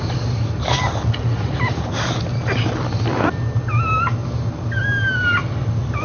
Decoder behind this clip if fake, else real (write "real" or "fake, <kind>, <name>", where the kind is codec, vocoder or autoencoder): real